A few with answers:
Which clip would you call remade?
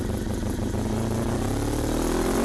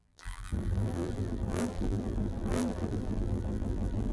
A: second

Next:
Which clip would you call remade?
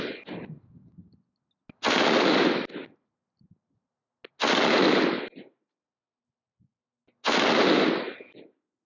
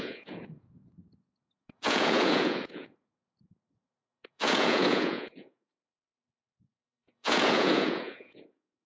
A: second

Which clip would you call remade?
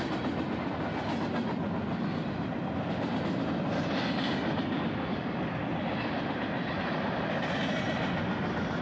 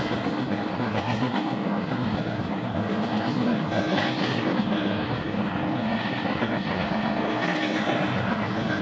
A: second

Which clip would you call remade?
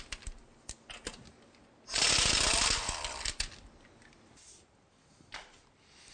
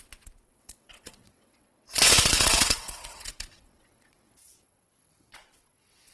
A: second